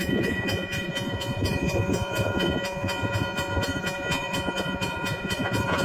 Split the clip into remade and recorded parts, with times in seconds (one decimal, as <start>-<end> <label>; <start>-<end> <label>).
0.0-5.8 remade